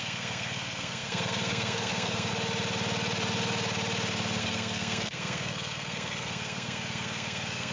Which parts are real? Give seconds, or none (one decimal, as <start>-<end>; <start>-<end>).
2.3-4.4